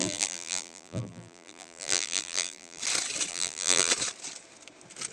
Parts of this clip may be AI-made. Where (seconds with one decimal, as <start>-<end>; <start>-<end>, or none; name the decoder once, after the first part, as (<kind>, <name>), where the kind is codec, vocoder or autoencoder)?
0.0-2.8 (vocoder, BigVGAN v2); 3.3-3.9